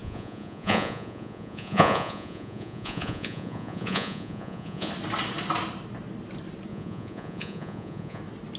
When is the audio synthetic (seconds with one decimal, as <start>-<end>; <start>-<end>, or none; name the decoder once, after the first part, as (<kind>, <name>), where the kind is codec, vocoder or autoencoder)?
0.0-4.9 (vocoder, Vocos); 6.7-8.2